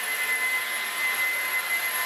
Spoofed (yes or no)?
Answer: no